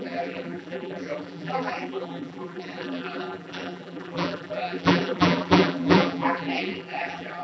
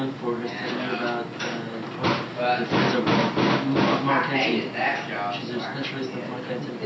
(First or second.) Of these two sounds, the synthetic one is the first